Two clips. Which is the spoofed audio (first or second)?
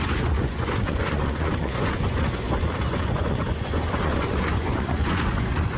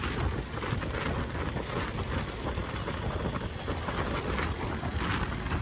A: first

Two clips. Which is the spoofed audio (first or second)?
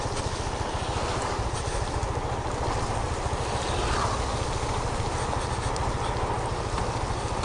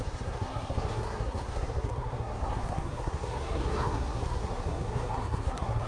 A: second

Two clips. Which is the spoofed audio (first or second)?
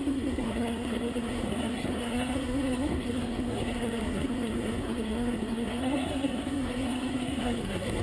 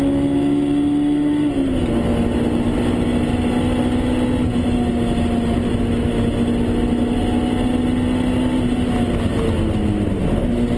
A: first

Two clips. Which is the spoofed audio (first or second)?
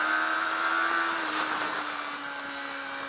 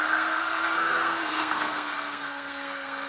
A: second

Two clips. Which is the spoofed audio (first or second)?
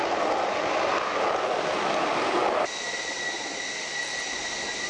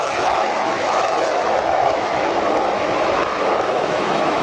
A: second